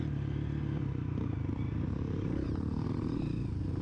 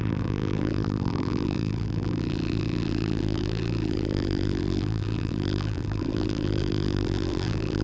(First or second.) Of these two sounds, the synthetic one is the second